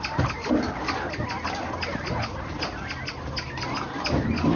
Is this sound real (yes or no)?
yes